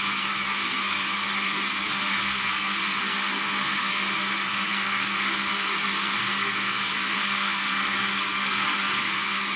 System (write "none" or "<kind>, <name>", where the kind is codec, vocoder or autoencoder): codec, SNAC